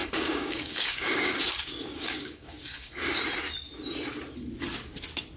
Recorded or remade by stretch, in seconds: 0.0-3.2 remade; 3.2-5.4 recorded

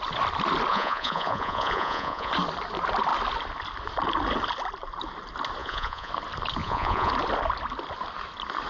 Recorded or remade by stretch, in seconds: 0.0-0.7 recorded; 0.7-2.3 remade; 2.3-5.6 recorded; 5.6-6.1 remade; 6.1-6.6 recorded; 6.6-7.1 remade; 7.1-8.7 recorded

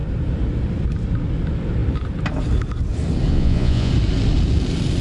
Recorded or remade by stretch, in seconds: 0.0-3.3 recorded; 3.3-3.9 remade; 3.9-5.0 recorded